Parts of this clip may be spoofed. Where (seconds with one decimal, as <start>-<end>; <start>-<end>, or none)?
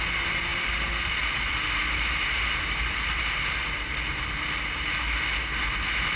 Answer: none